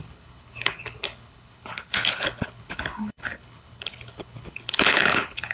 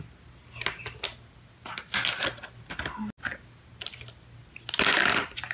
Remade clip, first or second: first